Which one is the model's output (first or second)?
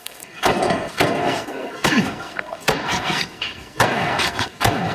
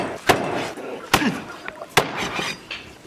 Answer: first